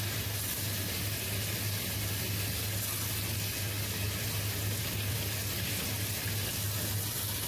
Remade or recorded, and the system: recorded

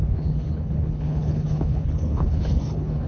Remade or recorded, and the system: remade, codec, HILCodec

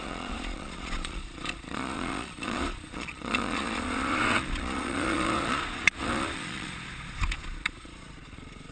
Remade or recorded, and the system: remade, vocoder, Vocos